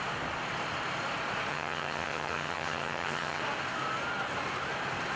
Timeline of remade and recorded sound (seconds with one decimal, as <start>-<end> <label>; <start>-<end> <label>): 0.0-1.5 recorded; 1.5-3.4 remade; 3.4-5.2 recorded